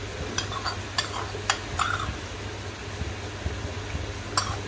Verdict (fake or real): real